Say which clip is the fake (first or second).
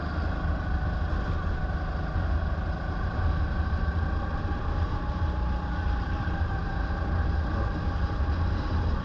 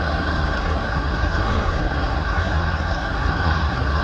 second